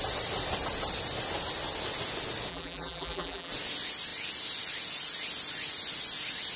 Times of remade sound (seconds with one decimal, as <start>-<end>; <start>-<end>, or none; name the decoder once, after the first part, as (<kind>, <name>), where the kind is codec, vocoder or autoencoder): 2.5-3.5 (vocoder, BigVGAN v2)